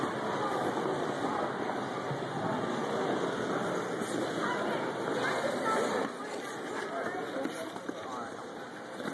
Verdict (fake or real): real